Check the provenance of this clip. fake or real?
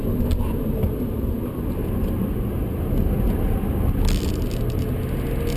real